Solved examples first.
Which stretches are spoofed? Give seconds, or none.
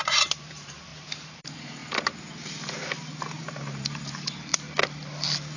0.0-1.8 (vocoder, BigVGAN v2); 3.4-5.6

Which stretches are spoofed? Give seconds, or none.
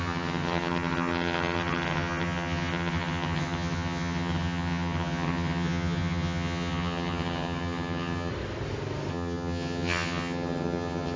0.0-8.3 (vocoder, HiFi-GAN); 9.1-11.2